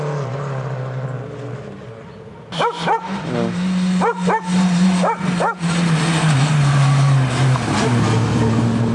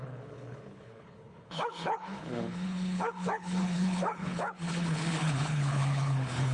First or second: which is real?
first